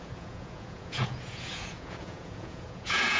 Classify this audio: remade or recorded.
remade